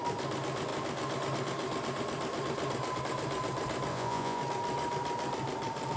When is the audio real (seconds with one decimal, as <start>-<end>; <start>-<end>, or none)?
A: 0.0-3.9; 4.4-6.0